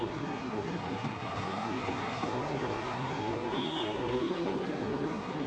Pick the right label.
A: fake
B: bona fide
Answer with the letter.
A